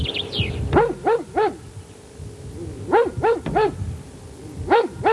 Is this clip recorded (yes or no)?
no